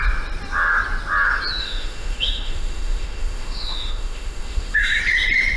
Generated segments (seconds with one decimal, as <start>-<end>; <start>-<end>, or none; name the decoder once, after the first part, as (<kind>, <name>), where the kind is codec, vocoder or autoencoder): 1.6-5.0 (autoencoder, DAC-VAE)